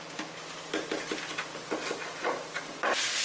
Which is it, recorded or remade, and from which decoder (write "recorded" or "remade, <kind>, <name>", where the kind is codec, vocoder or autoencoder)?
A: recorded